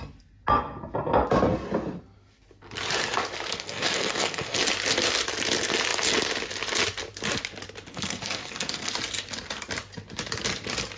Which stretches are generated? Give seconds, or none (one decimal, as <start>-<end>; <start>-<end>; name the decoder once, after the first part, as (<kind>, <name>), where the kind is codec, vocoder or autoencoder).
3.5-4.6 (codec, SNAC); 7.9-8.9